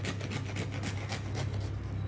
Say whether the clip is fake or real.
real